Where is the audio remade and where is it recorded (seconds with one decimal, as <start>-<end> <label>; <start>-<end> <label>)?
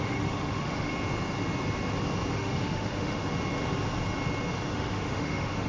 0.0-0.9 remade; 0.9-2.3 recorded; 2.3-3.2 remade; 3.2-4.7 recorded; 4.7-5.7 remade